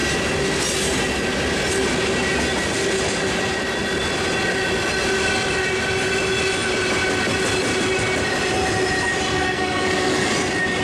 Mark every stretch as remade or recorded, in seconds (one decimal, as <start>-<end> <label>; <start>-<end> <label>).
0.0-9.3 recorded; 9.3-10.3 remade; 10.3-10.8 recorded